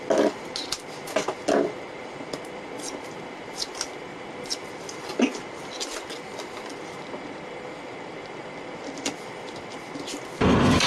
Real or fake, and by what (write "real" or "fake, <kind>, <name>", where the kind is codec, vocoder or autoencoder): real